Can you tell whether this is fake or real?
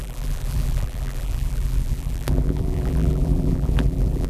fake